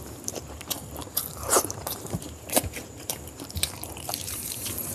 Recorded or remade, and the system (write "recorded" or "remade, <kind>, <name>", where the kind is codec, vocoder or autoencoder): remade, vocoder, BigVGAN v2